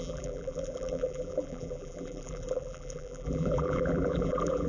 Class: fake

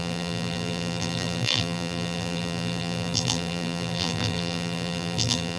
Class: fake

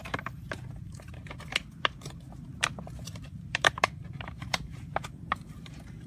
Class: fake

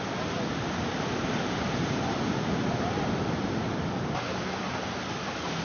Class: real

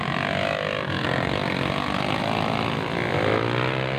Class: real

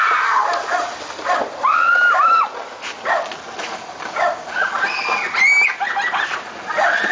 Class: real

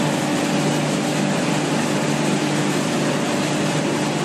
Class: real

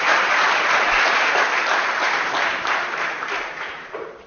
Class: fake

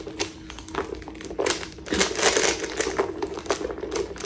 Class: real